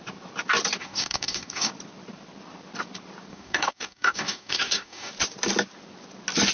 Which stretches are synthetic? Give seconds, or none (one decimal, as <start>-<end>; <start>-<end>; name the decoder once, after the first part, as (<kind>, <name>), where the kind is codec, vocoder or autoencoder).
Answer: 0.8-1.7 (codec, DAC); 3.3-5.1